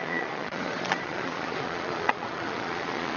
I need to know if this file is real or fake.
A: fake